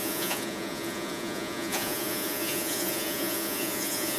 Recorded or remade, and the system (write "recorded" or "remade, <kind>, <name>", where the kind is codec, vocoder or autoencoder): remade, vocoder, Vocos